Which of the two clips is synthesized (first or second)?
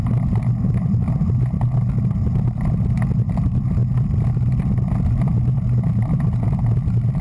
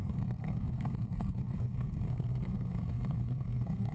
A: second